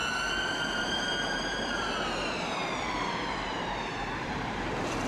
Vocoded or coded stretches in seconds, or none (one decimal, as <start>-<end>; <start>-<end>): 0.8-5.1